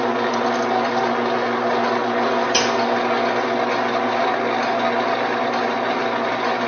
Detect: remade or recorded recorded